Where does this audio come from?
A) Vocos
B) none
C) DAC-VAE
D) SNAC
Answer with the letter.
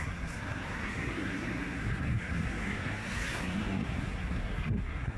D